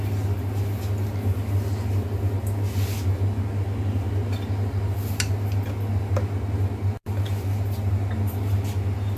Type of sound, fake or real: real